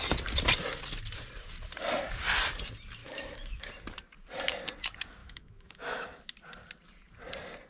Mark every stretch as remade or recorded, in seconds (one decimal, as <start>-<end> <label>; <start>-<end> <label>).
0.0-3.0 recorded; 3.0-3.7 remade; 3.7-5.2 recorded; 5.2-6.2 remade; 6.2-7.7 recorded